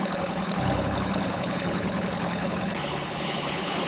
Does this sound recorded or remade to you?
remade